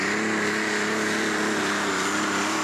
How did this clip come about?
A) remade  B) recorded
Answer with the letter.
B